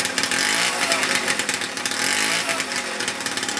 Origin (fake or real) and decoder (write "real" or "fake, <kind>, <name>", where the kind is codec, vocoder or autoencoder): real